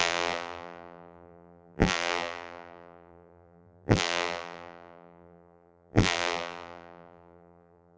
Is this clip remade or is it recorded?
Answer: remade